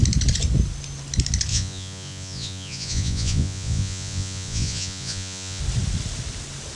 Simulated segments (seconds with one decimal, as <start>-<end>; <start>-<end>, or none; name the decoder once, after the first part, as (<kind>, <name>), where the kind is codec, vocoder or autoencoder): 1.5-5.6 (vocoder, Vocos)